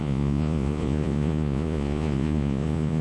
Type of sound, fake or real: fake